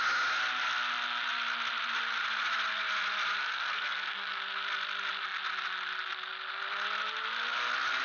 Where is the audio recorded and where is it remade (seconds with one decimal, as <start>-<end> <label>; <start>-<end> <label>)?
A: 0.0-3.4 recorded; 3.4-4.4 remade; 4.4-8.0 recorded